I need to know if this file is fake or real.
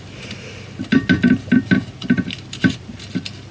real